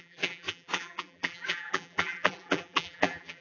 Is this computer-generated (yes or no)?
yes